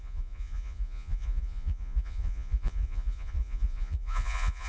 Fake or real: fake